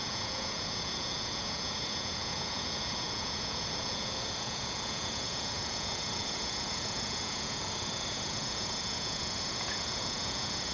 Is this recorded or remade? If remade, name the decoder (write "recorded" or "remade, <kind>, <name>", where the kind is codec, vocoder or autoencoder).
remade, vocoder, Vocos